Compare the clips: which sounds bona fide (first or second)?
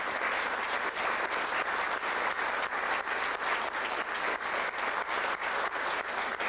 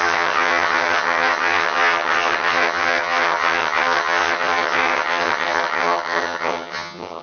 first